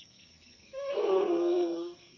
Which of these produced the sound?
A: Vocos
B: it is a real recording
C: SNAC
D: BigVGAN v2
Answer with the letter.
C